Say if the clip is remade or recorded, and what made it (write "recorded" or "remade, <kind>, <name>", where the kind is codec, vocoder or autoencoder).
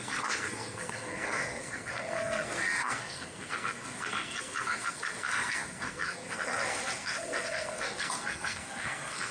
remade, codec, SNAC